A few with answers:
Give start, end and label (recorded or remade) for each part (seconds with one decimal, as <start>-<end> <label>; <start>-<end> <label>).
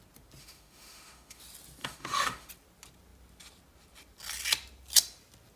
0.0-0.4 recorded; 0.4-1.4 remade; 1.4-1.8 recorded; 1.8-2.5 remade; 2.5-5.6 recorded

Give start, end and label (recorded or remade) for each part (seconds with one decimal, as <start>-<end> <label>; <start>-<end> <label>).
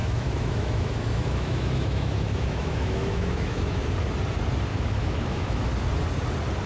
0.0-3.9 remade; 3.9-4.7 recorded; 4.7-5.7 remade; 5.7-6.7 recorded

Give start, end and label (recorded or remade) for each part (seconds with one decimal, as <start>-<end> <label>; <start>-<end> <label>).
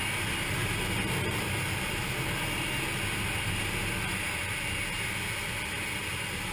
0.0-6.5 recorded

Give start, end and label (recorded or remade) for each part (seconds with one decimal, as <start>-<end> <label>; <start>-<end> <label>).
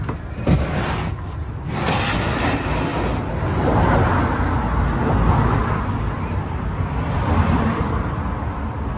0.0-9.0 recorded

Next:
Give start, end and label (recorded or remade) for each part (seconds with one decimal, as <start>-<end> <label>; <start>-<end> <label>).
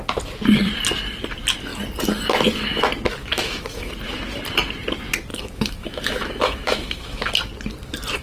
0.0-3.2 recorded; 3.2-3.9 remade; 3.9-5.3 recorded; 5.3-7.3 remade; 7.3-8.2 recorded